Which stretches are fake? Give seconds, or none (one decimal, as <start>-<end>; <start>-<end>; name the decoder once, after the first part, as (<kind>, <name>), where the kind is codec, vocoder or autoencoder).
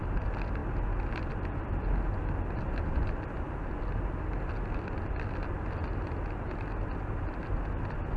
none